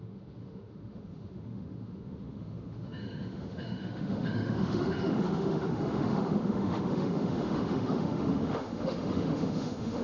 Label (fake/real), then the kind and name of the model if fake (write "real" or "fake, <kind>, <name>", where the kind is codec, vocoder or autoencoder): fake, autoencoder, DAC-VAE